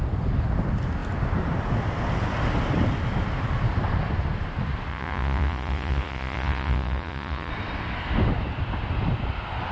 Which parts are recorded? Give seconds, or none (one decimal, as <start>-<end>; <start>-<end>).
0.0-4.9; 7.5-9.7